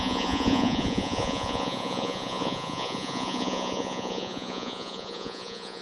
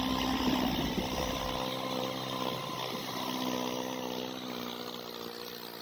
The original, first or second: second